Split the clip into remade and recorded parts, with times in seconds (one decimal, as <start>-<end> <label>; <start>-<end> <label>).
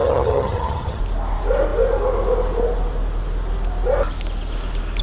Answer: 0.0-1.0 remade; 1.0-5.0 recorded